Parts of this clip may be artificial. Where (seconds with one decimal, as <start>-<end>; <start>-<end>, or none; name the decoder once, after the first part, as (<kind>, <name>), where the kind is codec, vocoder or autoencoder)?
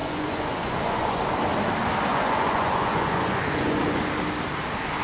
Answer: 0.0-1.2 (vocoder, Vocos); 2.1-4.0